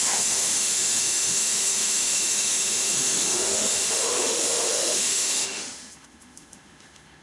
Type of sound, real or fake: fake